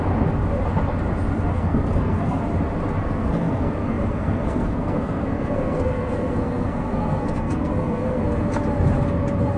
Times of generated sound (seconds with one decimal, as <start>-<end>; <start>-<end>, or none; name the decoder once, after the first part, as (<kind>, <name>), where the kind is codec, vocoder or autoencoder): 1.5-2.4 (codec, SNAC); 3.0-8.2